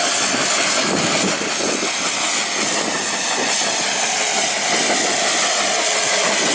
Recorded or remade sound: recorded